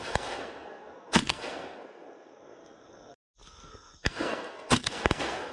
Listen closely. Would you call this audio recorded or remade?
remade